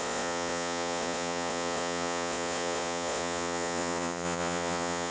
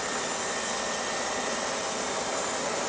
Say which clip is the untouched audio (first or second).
second